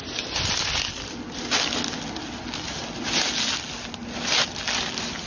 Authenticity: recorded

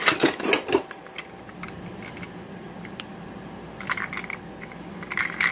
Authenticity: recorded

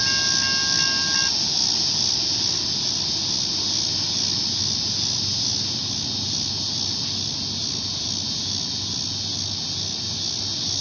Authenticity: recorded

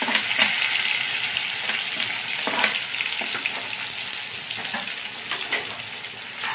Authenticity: recorded